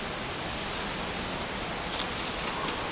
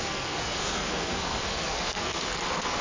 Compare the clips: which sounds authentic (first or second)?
first